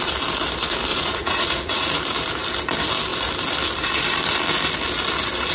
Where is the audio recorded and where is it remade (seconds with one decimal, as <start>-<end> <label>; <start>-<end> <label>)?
0.0-0.9 recorded; 0.9-2.0 remade; 2.0-5.5 recorded